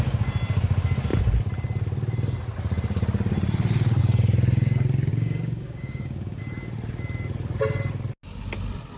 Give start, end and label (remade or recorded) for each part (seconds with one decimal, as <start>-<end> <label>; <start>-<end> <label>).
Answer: 0.0-5.1 recorded; 5.1-6.4 remade; 6.4-9.0 recorded